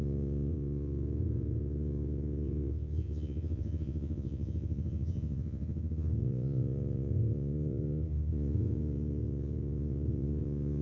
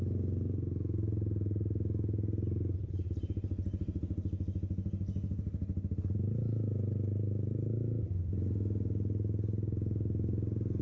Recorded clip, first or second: second